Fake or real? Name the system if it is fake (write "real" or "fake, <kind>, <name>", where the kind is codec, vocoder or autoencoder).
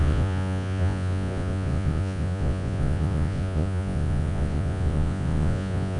fake, vocoder, Vocos